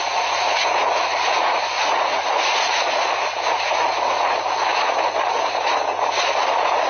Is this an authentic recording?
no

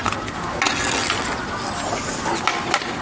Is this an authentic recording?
yes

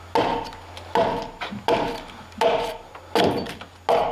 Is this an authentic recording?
yes